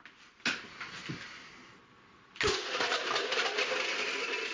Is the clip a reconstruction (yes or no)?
no